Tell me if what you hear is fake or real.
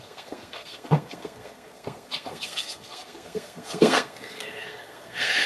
fake